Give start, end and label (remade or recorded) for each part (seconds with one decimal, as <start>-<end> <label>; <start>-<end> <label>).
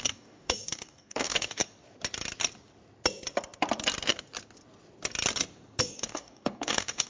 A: 0.0-1.6 remade; 1.6-5.8 recorded; 5.8-7.1 remade